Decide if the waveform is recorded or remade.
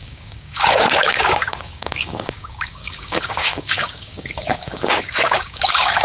remade